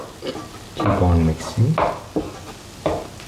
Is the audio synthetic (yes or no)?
no